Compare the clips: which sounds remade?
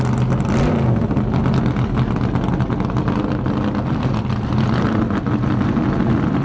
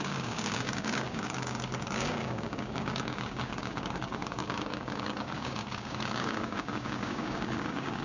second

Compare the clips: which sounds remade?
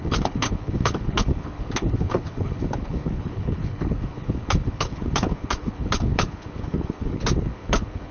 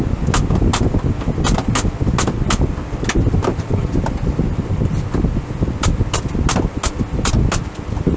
first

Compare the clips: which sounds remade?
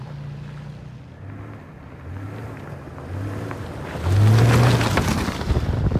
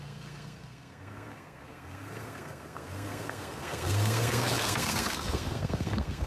second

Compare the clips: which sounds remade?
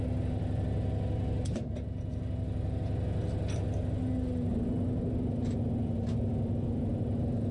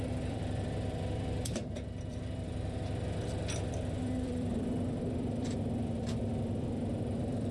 second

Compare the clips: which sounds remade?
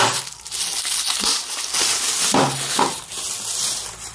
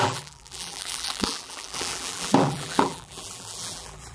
second